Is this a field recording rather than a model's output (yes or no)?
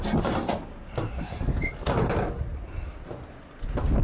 yes